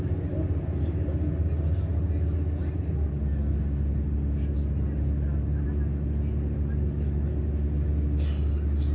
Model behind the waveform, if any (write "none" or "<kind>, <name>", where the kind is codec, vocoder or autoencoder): none